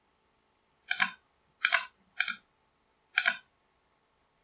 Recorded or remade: recorded